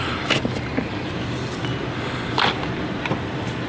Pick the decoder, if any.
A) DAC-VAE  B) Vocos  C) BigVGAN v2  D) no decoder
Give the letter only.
C